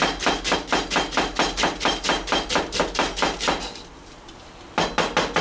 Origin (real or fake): real